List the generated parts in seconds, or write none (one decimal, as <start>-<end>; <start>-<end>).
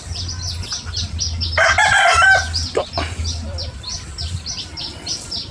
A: none